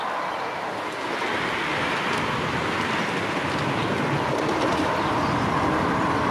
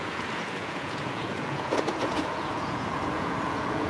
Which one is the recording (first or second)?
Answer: first